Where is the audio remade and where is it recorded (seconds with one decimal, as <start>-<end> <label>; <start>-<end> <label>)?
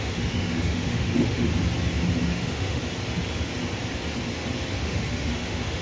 0.0-1.5 remade; 1.5-2.2 recorded; 2.2-2.8 remade; 2.8-4.8 recorded; 4.8-5.8 remade